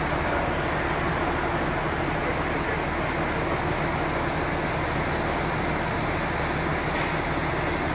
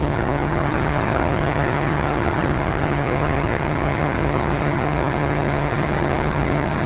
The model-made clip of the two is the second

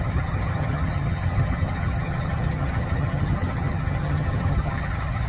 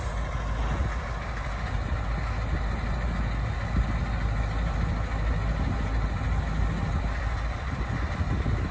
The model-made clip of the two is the first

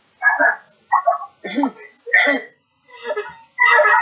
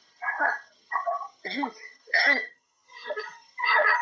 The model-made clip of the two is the second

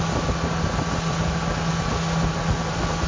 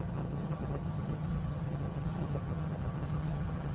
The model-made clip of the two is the second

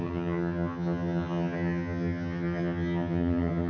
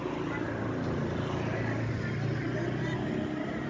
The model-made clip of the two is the first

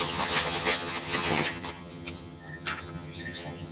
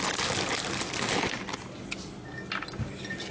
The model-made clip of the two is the first